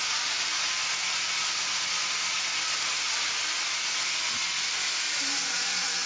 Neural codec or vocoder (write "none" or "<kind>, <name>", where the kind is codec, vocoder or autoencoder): none